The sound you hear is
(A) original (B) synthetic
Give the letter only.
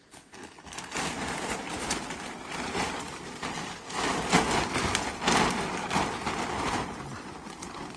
A